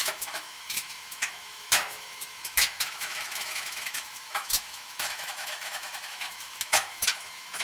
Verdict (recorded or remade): remade